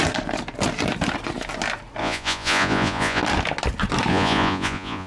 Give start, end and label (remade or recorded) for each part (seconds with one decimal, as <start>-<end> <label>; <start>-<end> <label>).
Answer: 0.0-2.0 recorded; 2.0-3.2 remade; 3.2-4.1 recorded; 4.1-5.1 remade